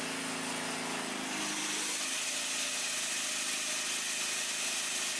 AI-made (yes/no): no